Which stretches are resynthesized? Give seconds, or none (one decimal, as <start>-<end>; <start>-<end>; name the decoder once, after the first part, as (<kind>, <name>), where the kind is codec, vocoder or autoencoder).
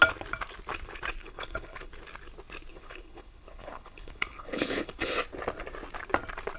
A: 1.2-1.9 (codec, HILCodec); 2.7-5.1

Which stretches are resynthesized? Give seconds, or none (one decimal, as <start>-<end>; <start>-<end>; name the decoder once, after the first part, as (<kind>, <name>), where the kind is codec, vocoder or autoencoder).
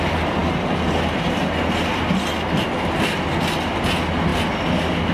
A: none